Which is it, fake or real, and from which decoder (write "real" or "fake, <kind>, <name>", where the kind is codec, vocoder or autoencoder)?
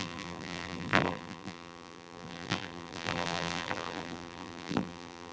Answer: fake, vocoder, BigVGAN v2